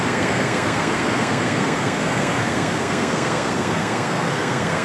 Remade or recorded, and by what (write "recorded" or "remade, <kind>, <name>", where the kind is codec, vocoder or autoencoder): remade, codec, SNAC